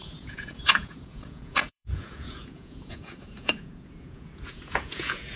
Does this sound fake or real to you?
fake